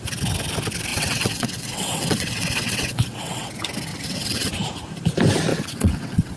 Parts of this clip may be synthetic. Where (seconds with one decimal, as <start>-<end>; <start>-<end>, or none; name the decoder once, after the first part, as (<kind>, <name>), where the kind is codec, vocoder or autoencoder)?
0.9-3.5 (vocoder, WaveNeXt); 3.9-4.5; 5.5-6.4